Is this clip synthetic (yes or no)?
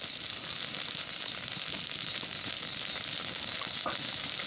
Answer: no